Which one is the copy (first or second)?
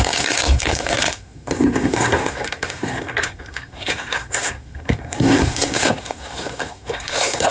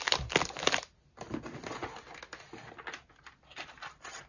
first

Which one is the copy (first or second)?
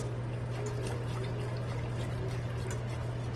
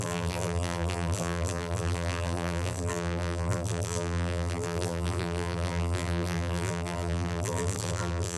second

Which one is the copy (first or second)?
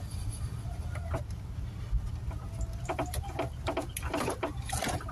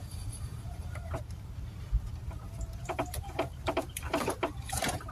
second